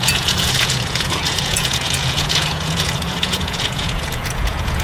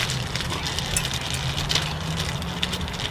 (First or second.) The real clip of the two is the second